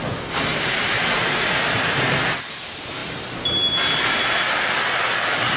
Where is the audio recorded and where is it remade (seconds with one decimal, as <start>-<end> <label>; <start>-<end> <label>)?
0.0-0.5 recorded; 0.5-2.2 remade; 2.2-5.6 recorded